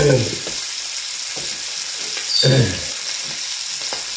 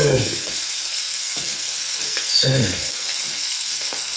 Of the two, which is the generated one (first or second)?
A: second